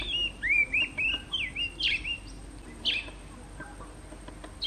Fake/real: real